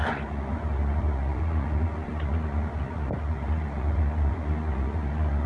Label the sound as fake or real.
fake